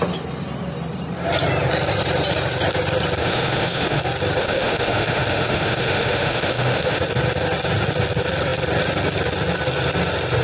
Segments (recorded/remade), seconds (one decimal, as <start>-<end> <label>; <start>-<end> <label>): 0.0-3.2 recorded; 3.2-4.0 remade; 4.0-4.4 recorded; 4.4-7.0 remade; 7.0-10.4 recorded